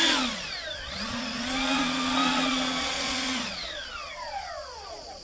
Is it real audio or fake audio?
fake